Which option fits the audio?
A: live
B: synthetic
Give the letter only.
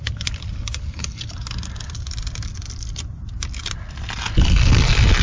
B